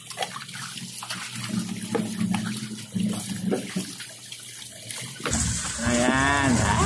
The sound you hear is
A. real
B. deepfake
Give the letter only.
A